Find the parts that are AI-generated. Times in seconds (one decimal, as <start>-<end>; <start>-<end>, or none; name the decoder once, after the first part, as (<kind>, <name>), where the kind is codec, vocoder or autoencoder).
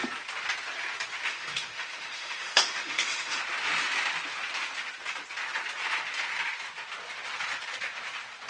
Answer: 1.3-3.4 (autoencoder, DAC-VAE)